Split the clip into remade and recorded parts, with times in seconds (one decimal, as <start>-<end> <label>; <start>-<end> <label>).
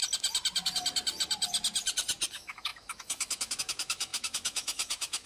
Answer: 0.0-2.3 recorded; 2.3-5.3 remade